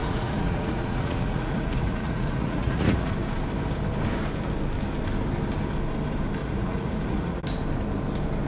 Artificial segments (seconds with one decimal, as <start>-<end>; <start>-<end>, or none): 0.0-3.1; 6.4-7.4